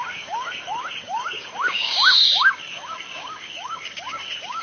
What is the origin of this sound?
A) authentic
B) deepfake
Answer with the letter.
B